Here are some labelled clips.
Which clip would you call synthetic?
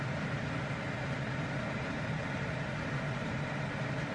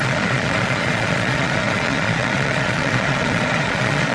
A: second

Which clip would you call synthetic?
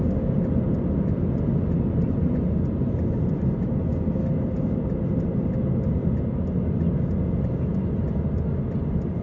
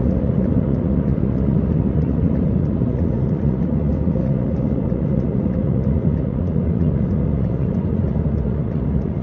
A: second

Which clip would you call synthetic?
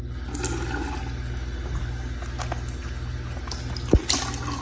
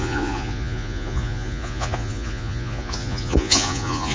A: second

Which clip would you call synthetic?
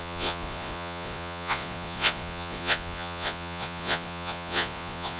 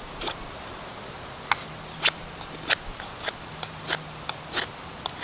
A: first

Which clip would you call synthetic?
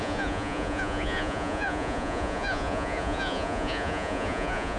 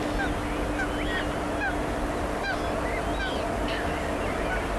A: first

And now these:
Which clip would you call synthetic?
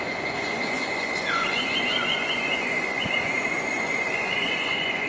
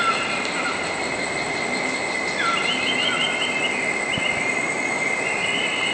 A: first